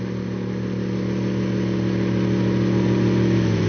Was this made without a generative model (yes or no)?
yes